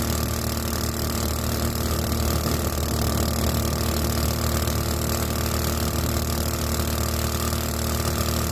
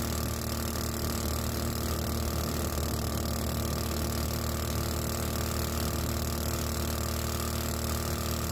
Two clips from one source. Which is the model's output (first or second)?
first